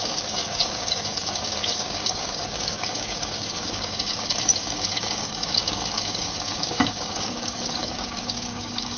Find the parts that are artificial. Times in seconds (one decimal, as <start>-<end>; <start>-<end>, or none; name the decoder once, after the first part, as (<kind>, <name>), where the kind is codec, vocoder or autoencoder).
0.0-9.0 (codec, DAC)